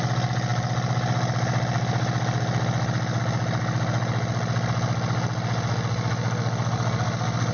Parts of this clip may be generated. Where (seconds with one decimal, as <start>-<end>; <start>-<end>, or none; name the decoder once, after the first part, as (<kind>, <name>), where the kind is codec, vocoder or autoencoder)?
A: none